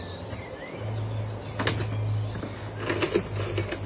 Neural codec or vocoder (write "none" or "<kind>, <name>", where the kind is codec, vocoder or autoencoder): none